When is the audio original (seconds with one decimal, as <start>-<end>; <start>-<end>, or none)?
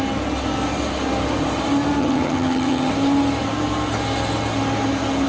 0.0-2.0; 2.9-5.3